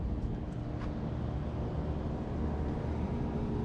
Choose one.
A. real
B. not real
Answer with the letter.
A